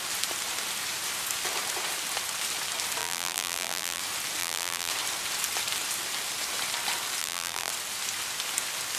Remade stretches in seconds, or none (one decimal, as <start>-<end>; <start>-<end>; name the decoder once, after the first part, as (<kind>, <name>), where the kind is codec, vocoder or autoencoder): 3.0-4.0 (vocoder, BigVGAN v2); 4.4-4.9; 7.2-7.7